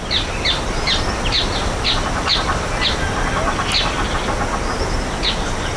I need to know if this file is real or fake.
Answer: real